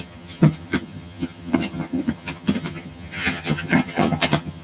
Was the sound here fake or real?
fake